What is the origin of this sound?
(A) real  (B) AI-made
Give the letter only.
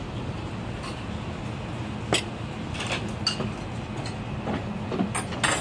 A